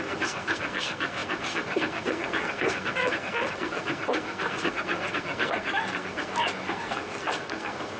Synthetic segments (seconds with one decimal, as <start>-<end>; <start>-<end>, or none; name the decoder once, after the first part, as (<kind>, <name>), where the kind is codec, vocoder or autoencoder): 0.0-8.0 (codec, SNAC)